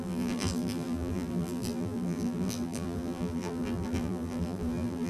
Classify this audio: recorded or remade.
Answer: remade